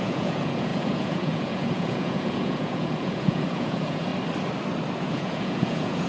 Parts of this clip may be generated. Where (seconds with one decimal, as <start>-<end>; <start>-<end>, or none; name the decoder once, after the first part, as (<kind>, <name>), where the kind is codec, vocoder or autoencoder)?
0.0-4.1 (vocoder, Vocos); 5.0-6.1